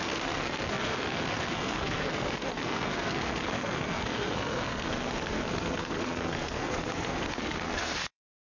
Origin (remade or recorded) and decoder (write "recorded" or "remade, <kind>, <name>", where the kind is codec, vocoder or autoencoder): remade, codec, SNAC